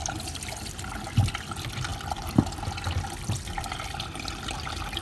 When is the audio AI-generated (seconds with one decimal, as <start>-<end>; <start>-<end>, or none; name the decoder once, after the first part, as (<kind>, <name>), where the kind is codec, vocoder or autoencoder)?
none